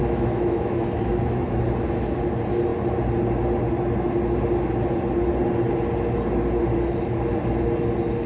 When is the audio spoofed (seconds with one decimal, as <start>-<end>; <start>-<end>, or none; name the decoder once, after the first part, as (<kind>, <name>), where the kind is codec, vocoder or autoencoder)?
0.0-1.6 (autoencoder, DAC-VAE)